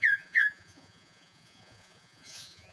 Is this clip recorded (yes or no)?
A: no